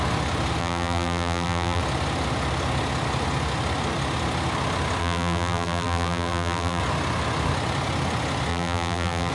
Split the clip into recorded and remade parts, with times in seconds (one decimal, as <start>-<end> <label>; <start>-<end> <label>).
0.0-0.6 recorded; 0.6-1.8 remade; 1.8-5.0 recorded; 5.0-6.8 remade; 6.8-8.5 recorded; 8.5-9.3 remade